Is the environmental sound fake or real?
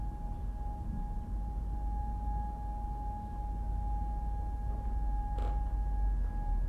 real